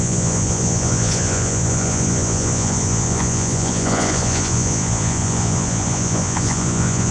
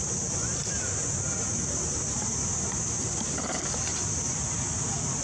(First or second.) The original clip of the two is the second